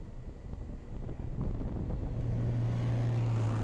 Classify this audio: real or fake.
real